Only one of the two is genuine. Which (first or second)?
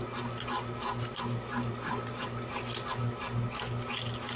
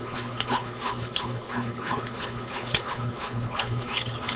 first